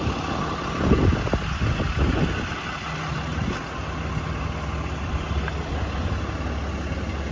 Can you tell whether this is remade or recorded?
recorded